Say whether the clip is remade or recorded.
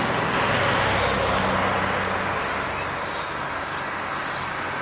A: recorded